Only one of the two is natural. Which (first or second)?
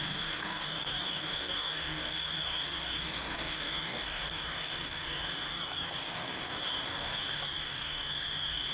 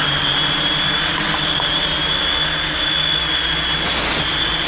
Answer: second